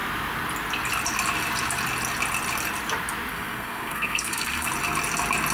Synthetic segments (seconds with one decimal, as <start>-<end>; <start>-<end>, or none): 3.3-4.7